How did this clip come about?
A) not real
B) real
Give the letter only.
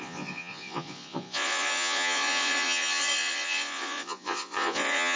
A